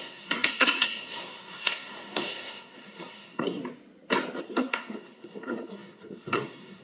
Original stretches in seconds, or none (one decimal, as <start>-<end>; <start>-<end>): 3.6-4.4